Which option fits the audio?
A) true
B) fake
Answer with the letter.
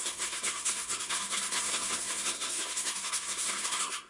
B